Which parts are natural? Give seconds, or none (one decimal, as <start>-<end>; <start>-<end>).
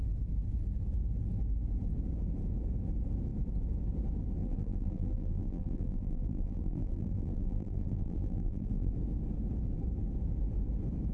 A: 0.0-4.4; 8.9-11.1